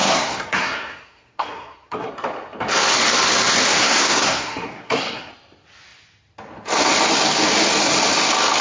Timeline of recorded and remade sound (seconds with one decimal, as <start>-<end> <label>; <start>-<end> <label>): 0.0-2.1 remade; 2.1-3.7 recorded; 3.7-5.3 remade; 5.3-8.6 recorded